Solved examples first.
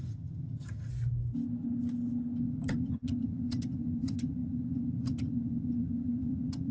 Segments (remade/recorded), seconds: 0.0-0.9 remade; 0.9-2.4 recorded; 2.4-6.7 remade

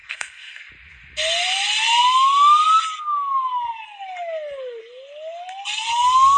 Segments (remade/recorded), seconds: 0.0-0.7 remade; 0.7-6.4 recorded

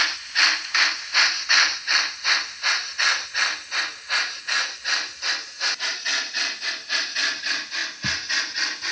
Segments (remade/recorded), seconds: 0.0-8.9 recorded

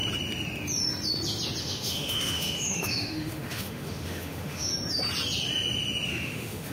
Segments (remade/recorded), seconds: 0.0-1.6 recorded; 1.6-4.7 remade; 4.7-6.1 recorded; 6.1-6.7 remade